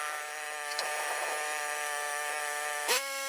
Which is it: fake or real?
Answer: fake